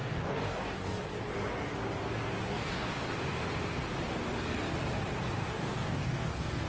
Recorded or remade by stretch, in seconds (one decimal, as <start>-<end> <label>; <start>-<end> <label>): 0.0-1.0 remade; 1.0-2.5 recorded; 2.5-3.0 remade; 3.0-5.4 recorded; 5.4-6.7 remade